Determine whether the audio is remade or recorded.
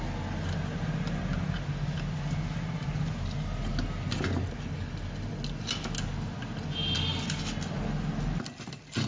recorded